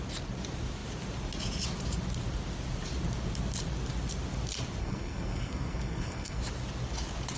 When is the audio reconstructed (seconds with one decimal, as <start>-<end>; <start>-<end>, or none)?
4.8-6.4